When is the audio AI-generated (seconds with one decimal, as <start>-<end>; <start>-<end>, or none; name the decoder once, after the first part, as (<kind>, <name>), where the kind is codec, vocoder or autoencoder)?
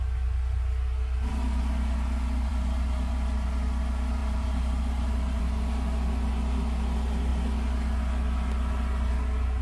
4.2-5.4 (vocoder, BigVGAN v2)